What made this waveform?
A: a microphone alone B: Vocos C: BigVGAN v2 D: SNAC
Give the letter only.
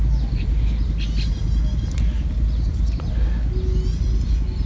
A